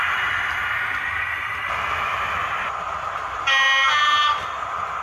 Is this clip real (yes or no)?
yes